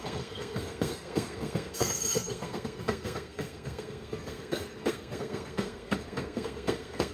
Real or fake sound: fake